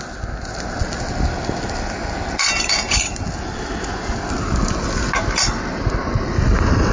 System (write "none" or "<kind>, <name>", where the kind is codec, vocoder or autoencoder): none